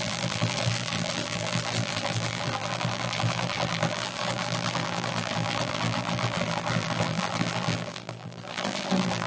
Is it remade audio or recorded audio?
remade